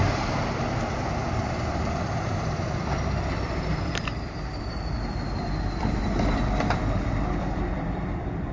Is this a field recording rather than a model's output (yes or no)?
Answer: no